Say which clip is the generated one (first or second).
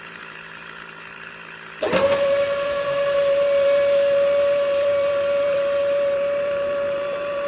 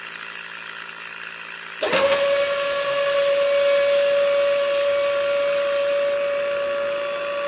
first